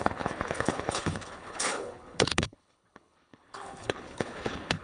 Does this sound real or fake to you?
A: fake